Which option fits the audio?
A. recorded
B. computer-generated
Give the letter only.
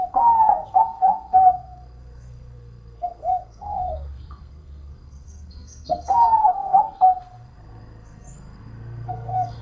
B